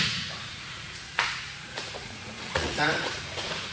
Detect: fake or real fake